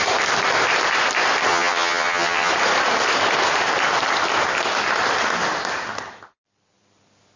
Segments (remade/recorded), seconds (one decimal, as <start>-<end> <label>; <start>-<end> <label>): 0.0-1.5 recorded; 1.5-2.5 remade; 2.5-7.4 recorded